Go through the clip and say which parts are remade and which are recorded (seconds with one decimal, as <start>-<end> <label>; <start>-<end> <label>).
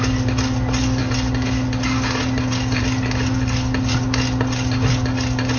0.0-5.6 recorded